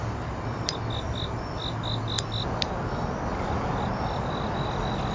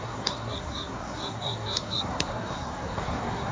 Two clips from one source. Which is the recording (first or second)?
first